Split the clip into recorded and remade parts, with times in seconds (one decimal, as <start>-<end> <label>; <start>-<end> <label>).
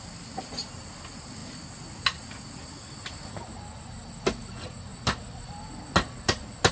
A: 0.0-6.7 recorded